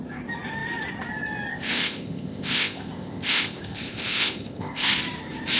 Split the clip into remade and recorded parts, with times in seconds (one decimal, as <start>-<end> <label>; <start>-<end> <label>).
0.0-1.5 recorded; 1.5-4.9 remade; 4.9-5.6 recorded